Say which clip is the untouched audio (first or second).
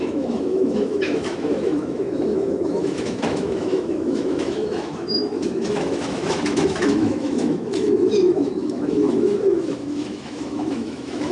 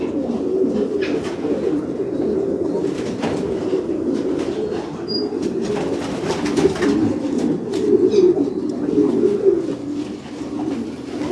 second